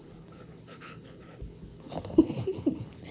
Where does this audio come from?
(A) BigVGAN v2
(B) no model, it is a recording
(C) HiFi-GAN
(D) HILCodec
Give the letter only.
D